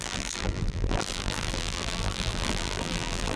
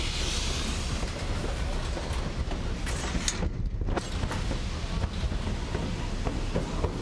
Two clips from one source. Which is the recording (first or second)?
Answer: second